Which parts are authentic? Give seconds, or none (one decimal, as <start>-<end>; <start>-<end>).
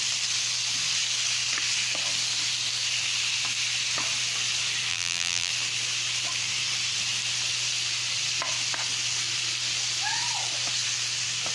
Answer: 0.0-4.9; 5.5-11.5